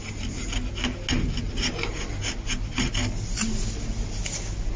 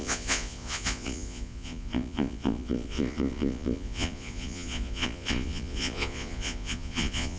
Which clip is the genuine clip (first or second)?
first